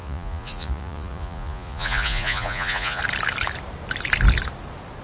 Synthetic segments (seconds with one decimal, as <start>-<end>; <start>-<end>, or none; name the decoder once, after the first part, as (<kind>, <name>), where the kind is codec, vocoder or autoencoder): 0.0-3.0 (vocoder, Vocos)